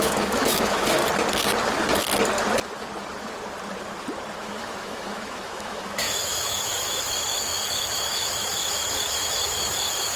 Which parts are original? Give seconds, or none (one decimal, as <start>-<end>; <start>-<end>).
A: 1.0-4.4